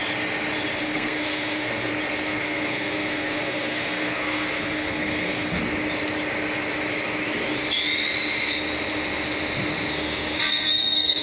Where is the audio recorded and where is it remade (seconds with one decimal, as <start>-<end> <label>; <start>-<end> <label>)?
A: 0.0-0.8 recorded; 0.8-1.9 remade; 1.9-2.4 recorded; 2.4-5.6 remade; 5.6-9.9 recorded; 9.9-11.2 remade